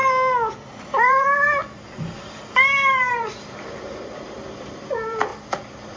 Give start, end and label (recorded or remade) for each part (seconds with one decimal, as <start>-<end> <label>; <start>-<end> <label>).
0.0-0.8 recorded; 0.8-5.3 remade; 5.3-6.0 recorded

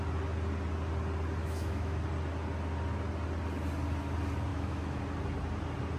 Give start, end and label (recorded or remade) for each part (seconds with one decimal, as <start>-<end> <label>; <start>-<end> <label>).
0.0-1.4 recorded; 1.4-2.0 remade; 2.0-4.5 recorded; 4.5-5.0 remade; 5.0-6.0 recorded

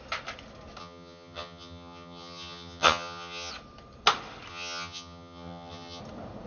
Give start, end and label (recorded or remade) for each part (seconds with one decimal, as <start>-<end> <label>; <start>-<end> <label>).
0.0-0.8 recorded; 0.8-3.5 remade; 3.5-4.5 recorded; 4.5-6.0 remade; 6.0-6.5 recorded

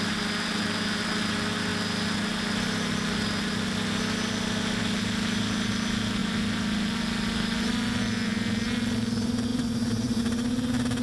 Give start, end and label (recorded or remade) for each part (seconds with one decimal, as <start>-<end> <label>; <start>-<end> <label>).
0.0-9.5 recorded; 9.5-10.2 remade; 10.2-11.0 recorded

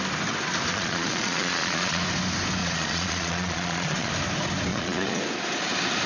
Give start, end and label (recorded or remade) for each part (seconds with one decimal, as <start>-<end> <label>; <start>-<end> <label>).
0.0-0.7 recorded; 0.7-2.0 remade; 2.0-2.6 recorded; 2.6-4.1 remade; 4.1-4.7 recorded; 4.7-5.2 remade; 5.2-6.1 recorded

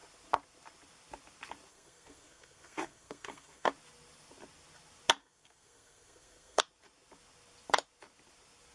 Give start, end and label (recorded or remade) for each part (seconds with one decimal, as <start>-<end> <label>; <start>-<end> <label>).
0.0-1.7 recorded; 1.7-3.7 remade; 3.7-5.2 recorded; 5.2-6.6 remade; 6.6-8.7 recorded

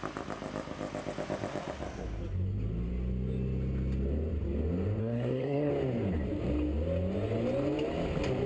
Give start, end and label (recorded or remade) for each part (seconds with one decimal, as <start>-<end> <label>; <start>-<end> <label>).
0.0-5.0 recorded; 5.0-5.7 remade; 5.7-8.5 recorded